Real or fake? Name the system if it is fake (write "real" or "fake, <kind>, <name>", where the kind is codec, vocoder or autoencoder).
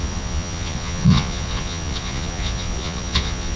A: fake, vocoder, Vocos